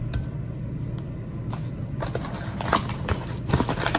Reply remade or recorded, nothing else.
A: recorded